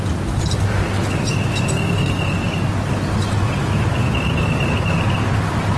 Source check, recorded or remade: recorded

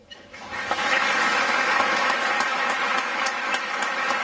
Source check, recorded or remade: remade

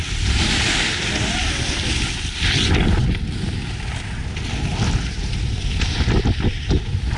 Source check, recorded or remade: recorded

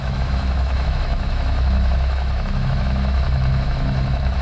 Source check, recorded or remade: remade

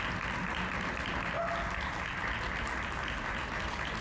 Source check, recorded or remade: recorded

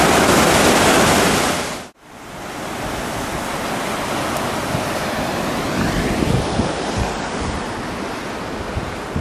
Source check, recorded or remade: recorded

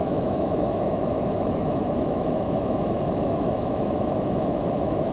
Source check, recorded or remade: remade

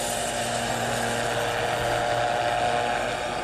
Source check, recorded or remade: recorded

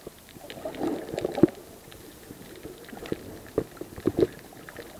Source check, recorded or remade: recorded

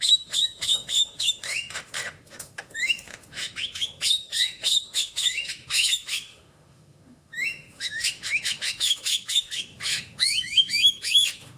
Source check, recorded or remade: remade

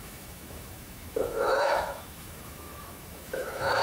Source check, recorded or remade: remade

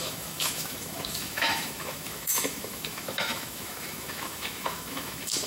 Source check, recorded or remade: remade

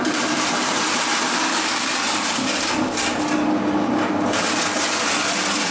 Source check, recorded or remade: recorded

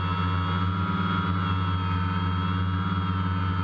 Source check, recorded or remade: recorded